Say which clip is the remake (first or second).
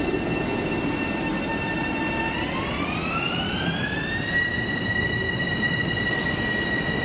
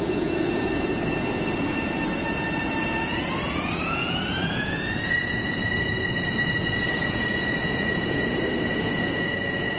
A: second